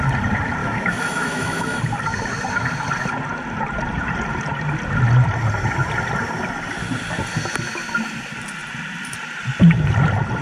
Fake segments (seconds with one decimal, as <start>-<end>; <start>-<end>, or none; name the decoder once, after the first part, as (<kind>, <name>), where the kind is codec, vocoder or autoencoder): 0.6-1.8 (autoencoder, DAC-VAE)